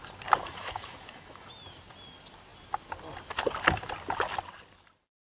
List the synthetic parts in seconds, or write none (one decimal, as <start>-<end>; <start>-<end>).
0.4-1.5